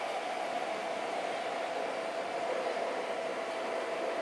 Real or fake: real